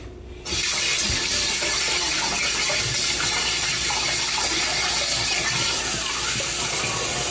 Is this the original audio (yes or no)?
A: yes